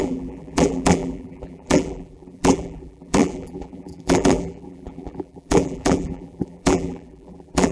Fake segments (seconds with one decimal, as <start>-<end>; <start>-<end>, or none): 0.0-7.7